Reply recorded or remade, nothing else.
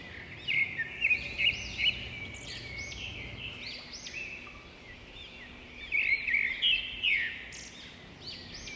recorded